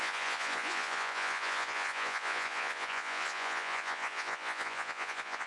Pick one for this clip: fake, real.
fake